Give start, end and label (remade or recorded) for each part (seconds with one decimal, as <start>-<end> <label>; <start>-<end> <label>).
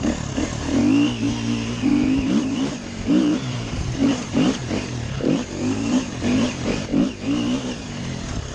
0.0-0.8 remade; 0.8-1.9 recorded; 1.9-6.9 remade; 6.9-7.6 recorded; 7.6-8.5 remade